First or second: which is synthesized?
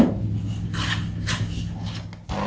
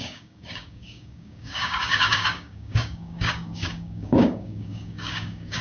second